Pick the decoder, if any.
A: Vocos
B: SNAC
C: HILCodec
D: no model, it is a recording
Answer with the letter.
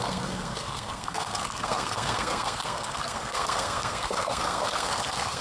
B